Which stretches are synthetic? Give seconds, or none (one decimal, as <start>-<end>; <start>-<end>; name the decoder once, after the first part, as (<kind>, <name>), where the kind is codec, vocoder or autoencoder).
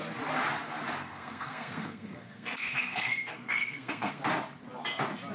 1.0-4.2 (codec, SNAC)